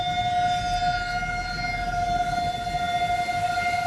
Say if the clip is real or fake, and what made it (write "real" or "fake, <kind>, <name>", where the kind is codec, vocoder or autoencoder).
real